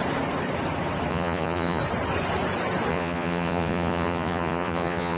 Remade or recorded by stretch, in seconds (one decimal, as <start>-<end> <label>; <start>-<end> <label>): 0.0-1.1 recorded; 1.1-1.8 remade; 1.8-2.9 recorded; 2.9-5.2 remade

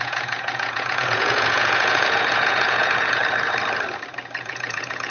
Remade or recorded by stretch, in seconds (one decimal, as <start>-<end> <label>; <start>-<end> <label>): 0.0-3.2 remade; 3.2-4.4 recorded; 4.4-5.1 remade